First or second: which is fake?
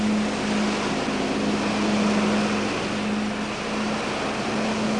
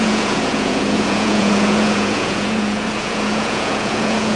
second